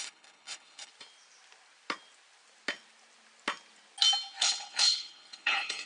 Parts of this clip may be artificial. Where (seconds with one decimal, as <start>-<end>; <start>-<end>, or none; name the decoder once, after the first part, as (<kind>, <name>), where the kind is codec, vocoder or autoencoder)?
0.0-0.9 (codec, HILCodec); 4.4-5.9

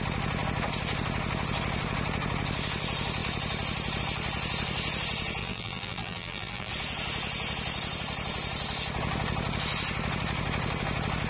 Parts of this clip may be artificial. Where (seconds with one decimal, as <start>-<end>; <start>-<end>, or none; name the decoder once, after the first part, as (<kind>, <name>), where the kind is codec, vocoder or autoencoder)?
5.4-6.7 (vocoder, BigVGAN v2)

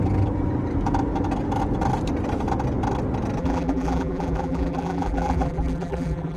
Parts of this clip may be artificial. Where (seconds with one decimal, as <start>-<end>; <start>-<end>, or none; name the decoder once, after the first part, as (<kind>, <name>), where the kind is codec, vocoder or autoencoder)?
3.4-6.4 (vocoder, BigVGAN v2)

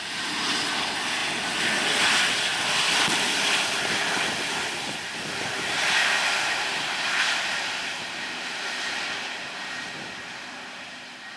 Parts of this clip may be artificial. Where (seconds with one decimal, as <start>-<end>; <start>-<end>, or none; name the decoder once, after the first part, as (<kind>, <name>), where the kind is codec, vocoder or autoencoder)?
none

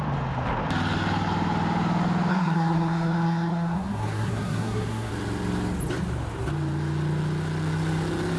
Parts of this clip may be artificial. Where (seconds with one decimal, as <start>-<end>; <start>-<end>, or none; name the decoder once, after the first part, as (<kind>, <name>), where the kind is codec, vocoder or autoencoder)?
2.3-5.1 (codec, SNAC)

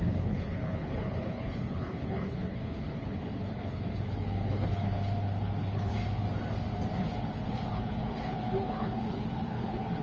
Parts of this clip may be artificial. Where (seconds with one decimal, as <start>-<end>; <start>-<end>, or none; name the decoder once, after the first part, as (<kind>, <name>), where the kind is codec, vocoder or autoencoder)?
0.0-6.0 (codec, HILCodec); 6.9-10.0

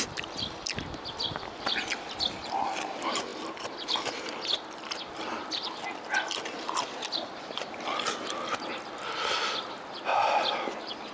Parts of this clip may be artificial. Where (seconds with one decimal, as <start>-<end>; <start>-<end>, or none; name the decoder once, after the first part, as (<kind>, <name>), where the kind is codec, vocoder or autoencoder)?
none